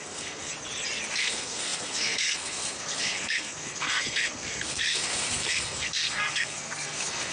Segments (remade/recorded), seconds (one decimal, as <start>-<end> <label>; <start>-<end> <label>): 0.0-0.5 remade; 0.5-1.1 recorded; 1.1-7.3 remade